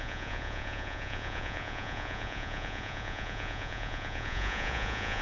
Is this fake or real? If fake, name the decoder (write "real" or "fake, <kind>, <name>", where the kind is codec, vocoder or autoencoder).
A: fake, vocoder, Vocos